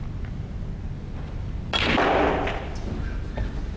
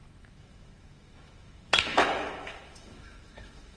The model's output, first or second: second